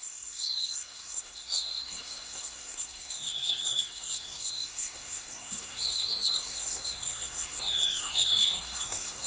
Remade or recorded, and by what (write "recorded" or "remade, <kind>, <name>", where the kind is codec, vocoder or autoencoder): remade, codec, SNAC